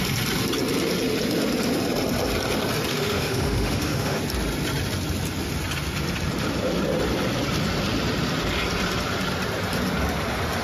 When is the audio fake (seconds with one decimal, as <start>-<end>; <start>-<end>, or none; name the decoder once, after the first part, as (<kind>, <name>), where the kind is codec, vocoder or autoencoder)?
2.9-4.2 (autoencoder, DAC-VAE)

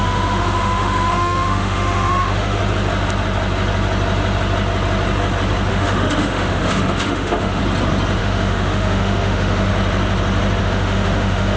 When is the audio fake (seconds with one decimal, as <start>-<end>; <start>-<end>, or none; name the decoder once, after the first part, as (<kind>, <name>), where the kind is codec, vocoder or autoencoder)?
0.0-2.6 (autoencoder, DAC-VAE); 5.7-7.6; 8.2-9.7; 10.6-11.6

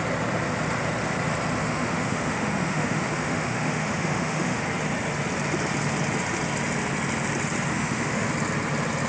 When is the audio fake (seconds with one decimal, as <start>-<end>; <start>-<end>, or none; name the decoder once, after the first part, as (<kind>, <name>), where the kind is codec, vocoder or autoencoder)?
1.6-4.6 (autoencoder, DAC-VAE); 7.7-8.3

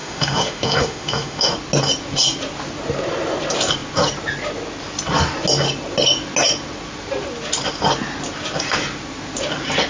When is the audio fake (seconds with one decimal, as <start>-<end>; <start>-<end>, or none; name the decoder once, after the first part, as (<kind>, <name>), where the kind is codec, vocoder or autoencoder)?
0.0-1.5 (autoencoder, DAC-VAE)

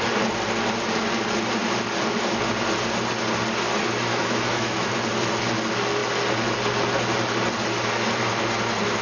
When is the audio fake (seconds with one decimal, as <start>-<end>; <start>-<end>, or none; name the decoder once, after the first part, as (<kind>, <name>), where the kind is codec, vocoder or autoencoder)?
4.1-4.9 (autoencoder, DAC-VAE)

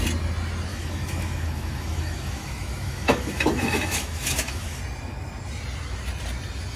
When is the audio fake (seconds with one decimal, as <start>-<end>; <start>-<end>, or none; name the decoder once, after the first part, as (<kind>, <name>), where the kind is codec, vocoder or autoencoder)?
0.7-4.8 (autoencoder, DAC-VAE)